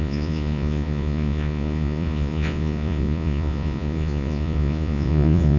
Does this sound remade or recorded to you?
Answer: remade